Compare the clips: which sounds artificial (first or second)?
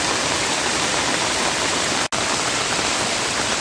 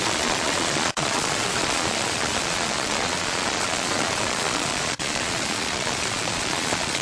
second